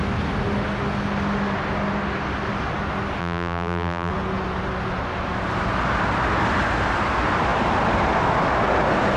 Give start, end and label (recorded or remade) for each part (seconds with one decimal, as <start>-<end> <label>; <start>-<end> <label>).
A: 0.0-3.2 recorded; 3.2-4.1 remade; 4.1-9.2 recorded